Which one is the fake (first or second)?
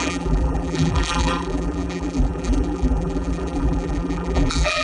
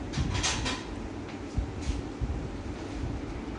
first